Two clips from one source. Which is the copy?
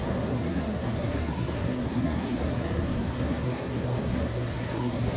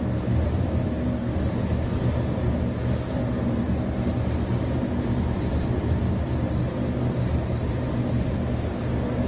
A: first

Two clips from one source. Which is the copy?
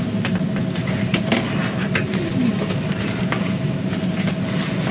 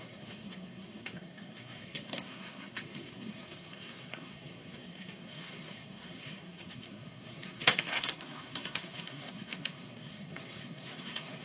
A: second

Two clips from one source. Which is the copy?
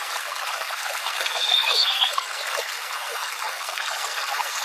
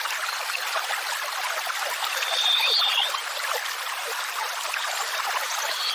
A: first